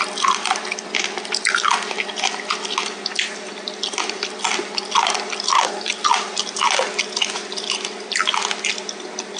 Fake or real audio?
real